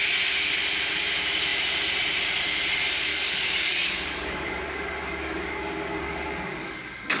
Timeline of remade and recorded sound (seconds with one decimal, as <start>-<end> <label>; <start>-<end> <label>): 0.0-3.1 recorded; 3.1-7.2 remade